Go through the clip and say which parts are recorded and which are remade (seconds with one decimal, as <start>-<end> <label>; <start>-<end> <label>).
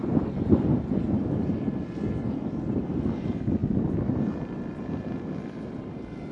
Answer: 0.0-6.3 recorded